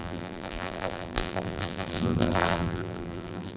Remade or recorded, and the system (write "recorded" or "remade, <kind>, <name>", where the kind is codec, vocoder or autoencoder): remade, vocoder, BigVGAN v2